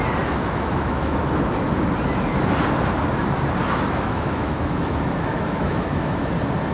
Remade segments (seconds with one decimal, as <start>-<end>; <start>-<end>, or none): 0.4-1.2; 3.6-6.3